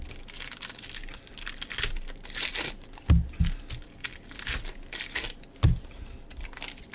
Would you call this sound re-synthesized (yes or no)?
no